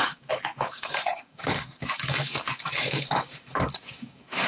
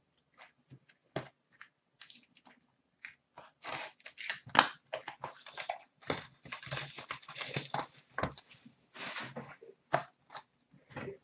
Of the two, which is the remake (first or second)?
first